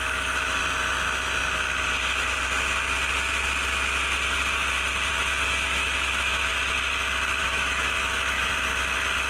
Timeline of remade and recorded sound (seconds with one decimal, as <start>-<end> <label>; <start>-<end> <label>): 0.0-0.6 remade; 0.6-5.1 recorded; 5.1-6.5 remade; 6.5-7.4 recorded; 7.4-8.5 remade; 8.5-9.3 recorded

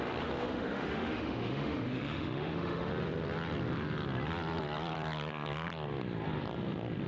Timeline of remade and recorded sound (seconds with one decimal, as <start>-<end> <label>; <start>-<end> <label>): 0.0-0.4 recorded; 0.4-2.9 remade; 2.9-7.1 recorded

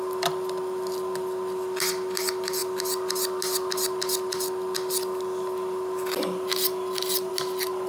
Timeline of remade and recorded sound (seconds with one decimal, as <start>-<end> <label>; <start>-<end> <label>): 0.0-7.9 recorded

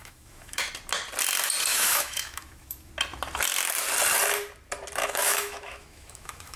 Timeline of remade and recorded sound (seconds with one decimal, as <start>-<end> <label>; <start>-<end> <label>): 0.0-0.7 remade; 0.7-1.7 recorded; 1.7-2.9 remade; 2.9-5.0 recorded; 5.0-6.6 remade

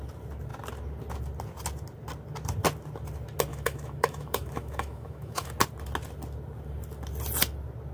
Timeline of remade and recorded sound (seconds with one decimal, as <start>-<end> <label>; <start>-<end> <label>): 0.0-3.5 recorded; 3.5-5.5 remade; 5.5-7.9 recorded